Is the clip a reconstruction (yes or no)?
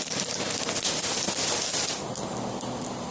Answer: no